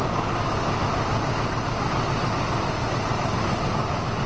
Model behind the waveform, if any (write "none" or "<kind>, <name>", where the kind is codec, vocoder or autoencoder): none